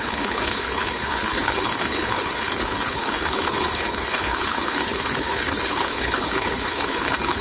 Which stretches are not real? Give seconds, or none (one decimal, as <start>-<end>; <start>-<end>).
0.0-7.4